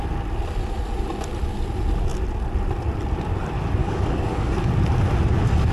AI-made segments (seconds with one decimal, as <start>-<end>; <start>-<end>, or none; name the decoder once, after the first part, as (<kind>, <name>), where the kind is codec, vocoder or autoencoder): 3.8-4.7 (codec, DAC)

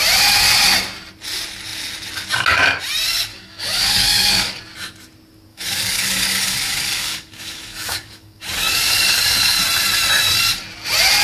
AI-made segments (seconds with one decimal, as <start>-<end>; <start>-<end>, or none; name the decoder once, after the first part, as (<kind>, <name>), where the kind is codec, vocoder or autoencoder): 3.3-4.6 (codec, DAC); 5.5-9.6